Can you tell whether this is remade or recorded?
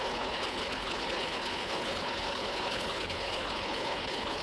remade